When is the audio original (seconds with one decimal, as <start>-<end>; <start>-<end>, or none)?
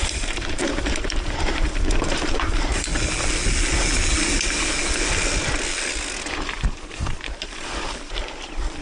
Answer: 2.9-6.2